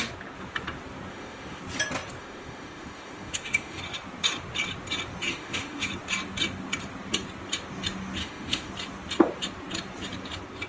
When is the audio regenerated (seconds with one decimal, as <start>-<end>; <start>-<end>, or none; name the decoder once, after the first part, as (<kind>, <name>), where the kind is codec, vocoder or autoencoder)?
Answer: 1.1-1.6 (autoencoder, DAC-VAE); 2.2-3.8; 5.3-5.9; 8.2-8.7